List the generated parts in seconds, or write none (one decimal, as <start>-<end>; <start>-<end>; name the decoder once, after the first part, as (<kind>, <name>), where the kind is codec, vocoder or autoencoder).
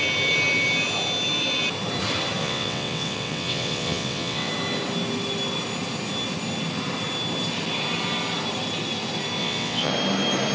2.4-4.5 (vocoder, WaveNeXt); 9.4-9.9